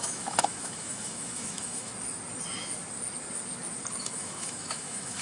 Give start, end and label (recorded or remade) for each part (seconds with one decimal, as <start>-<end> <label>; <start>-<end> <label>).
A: 0.0-1.9 remade; 1.9-4.0 recorded; 4.0-5.2 remade